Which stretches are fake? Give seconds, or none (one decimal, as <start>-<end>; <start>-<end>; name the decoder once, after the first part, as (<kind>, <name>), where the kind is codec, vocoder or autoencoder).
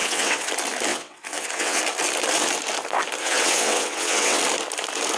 0.0-0.5 (vocoder, WaveNeXt); 0.9-1.8; 3.2-4.4